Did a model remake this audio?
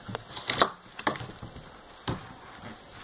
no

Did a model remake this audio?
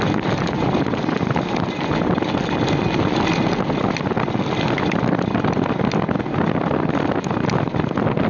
no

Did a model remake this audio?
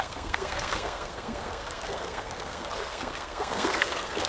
yes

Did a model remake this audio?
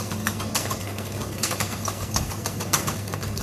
yes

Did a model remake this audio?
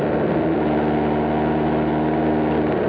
no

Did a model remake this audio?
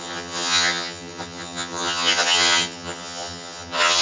yes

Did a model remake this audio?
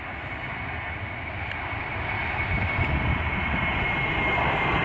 no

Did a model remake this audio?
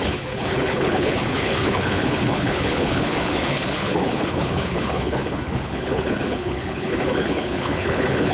yes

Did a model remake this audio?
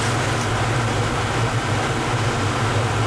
no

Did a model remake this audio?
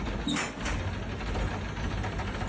no